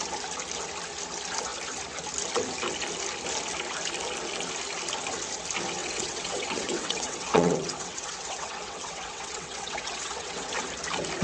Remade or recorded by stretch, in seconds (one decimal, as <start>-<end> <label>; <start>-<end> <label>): 0.0-5.8 recorded; 5.8-10.6 remade; 10.6-11.2 recorded